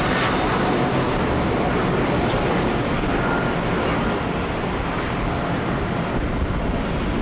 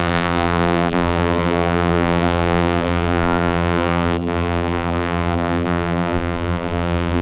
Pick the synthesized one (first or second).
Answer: second